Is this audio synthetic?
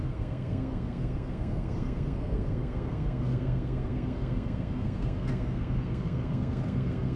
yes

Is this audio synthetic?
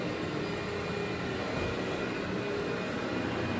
no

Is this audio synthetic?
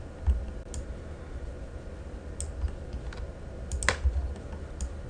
no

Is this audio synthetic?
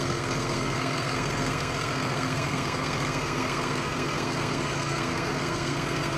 yes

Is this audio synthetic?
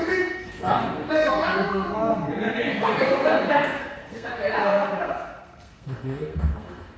yes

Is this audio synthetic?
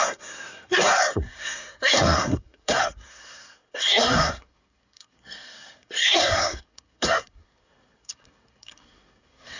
yes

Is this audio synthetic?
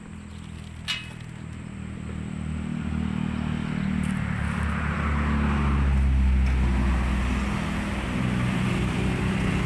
no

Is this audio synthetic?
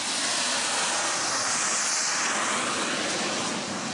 no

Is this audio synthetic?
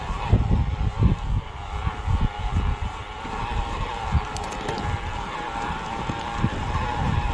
no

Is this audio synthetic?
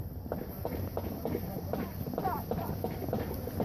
no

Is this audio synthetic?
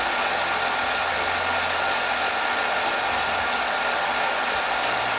no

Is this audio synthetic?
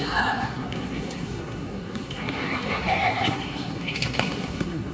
yes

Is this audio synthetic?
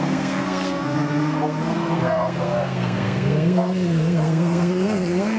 yes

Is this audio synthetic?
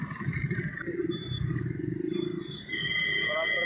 no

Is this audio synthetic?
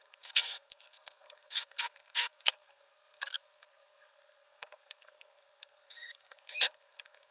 yes